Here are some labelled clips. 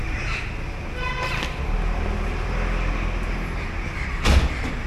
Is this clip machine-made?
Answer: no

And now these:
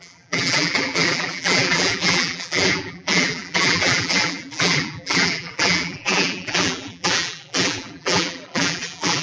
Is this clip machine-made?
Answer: yes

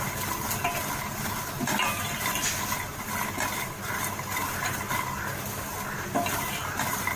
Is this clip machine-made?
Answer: no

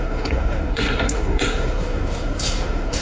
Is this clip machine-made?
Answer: yes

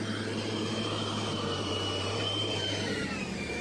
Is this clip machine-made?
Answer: yes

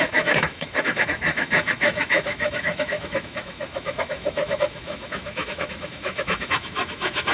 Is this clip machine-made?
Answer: yes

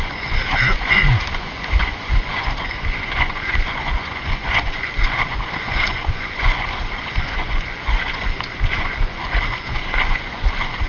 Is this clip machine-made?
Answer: yes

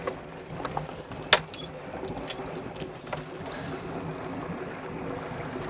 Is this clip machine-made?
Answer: no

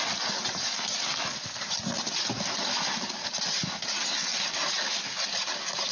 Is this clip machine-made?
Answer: no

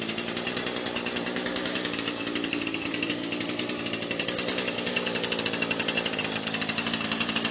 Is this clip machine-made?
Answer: no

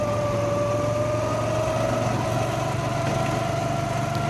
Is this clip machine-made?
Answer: no